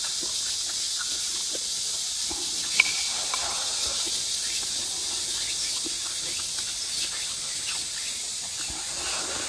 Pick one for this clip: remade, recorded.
recorded